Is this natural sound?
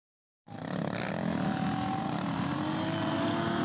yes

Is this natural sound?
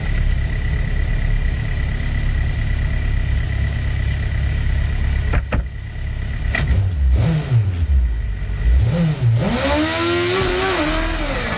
yes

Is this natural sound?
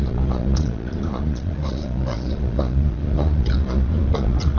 no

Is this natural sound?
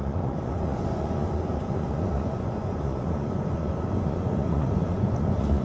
no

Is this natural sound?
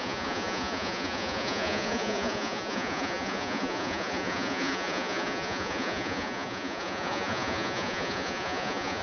no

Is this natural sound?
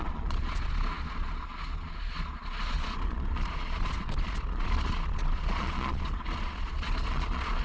no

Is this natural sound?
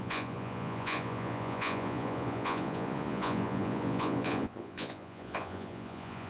no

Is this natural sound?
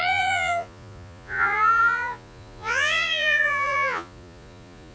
no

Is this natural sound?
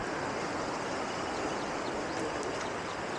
yes